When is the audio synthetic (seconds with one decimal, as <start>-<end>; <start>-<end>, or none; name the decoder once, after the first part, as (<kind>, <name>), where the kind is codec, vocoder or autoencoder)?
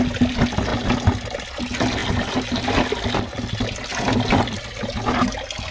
2.0-2.6 (vocoder, BigVGAN v2); 3.9-4.6